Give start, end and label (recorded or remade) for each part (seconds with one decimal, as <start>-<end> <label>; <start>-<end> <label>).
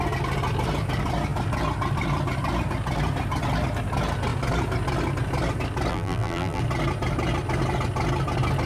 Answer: 0.0-5.9 recorded; 5.9-6.6 remade; 6.6-8.7 recorded